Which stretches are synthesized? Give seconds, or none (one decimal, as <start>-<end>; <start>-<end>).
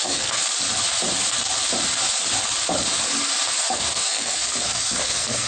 0.0-0.4; 3.5-5.5